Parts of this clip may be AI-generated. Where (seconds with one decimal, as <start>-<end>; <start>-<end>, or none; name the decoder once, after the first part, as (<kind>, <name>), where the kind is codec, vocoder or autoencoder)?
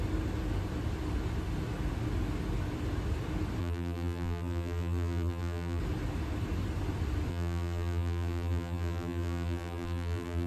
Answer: 3.6-5.8 (vocoder, BigVGAN v2); 7.3-10.5